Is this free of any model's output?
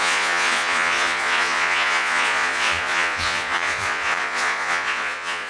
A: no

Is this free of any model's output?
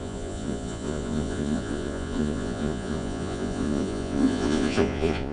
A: no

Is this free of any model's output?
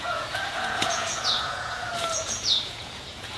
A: no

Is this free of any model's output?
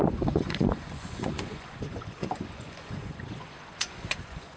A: no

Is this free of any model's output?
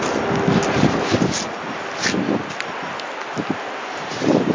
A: yes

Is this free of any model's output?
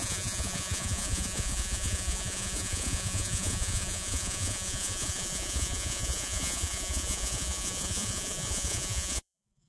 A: no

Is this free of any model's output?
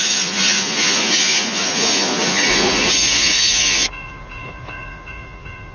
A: no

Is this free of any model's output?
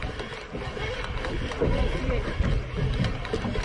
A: yes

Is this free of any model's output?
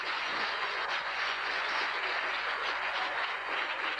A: no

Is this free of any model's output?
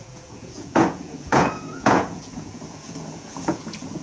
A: no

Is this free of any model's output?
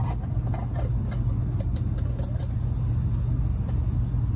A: yes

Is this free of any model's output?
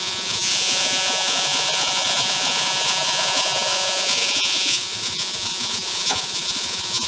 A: no